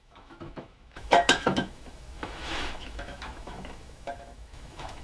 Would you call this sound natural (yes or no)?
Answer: no